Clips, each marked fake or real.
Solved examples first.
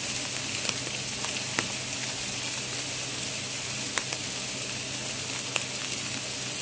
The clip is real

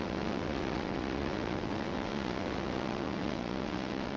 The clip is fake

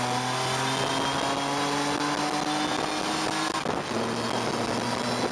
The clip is real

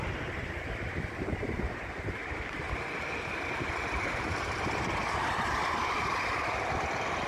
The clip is fake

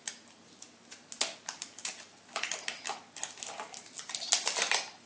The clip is real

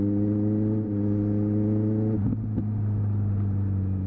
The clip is real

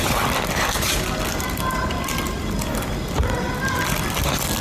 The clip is real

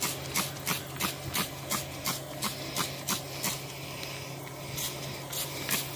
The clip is real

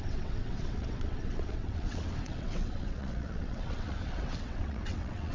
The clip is fake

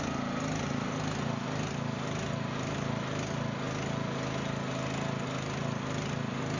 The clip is real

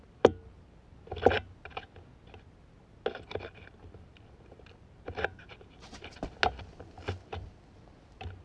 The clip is real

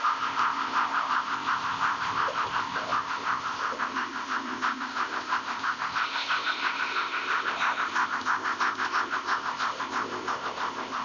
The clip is fake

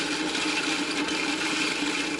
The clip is real